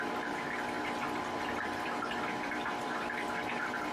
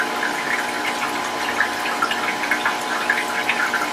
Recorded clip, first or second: second